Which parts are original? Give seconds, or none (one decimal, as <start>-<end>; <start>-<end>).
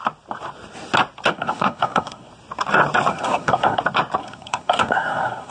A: 0.0-1.3; 2.3-3.1; 3.8-4.2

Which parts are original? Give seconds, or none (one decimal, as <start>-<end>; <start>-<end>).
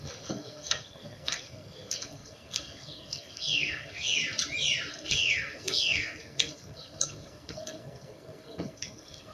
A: 4.2-4.9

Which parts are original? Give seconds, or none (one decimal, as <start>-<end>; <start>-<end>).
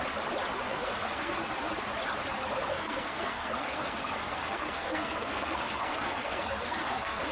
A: 0.0-0.7; 1.4-2.7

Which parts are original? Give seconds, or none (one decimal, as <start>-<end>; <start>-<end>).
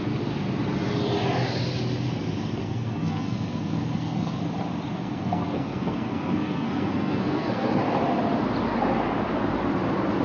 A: 0.0-2.6; 4.4-4.9; 7.7-10.2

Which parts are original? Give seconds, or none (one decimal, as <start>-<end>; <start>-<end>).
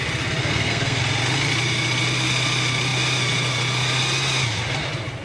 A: 0.0-0.4; 1.0-5.2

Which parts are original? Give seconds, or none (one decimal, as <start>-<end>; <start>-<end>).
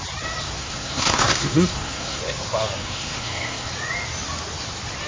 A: 0.0-0.6; 2.2-2.8; 3.7-5.1